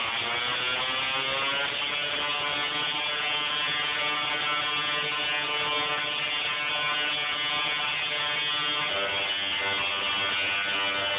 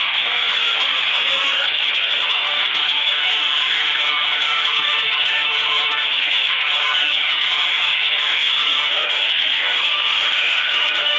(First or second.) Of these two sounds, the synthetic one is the second